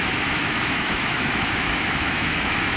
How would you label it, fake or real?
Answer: fake